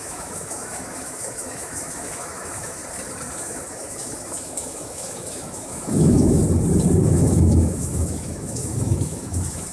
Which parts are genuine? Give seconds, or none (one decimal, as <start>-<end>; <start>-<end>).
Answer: 2.8-3.3; 6.4-7.0